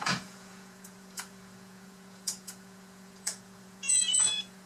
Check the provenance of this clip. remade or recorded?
remade